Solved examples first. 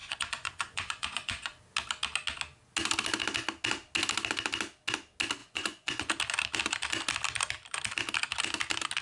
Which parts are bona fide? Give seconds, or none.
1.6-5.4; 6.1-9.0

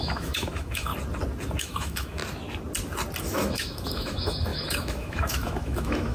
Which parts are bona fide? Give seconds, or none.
0.9-1.6; 2.2-3.2

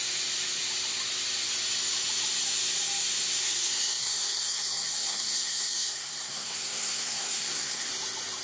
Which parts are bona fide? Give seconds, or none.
0.0-3.4; 7.9-8.4

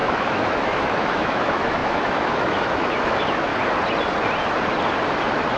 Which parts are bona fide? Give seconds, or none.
3.5-5.6